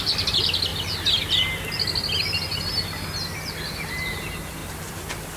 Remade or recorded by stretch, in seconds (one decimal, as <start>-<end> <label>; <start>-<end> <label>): 0.0-0.7 remade; 0.7-3.9 recorded; 3.9-4.6 remade; 4.6-5.4 recorded